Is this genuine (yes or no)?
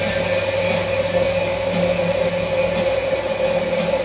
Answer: yes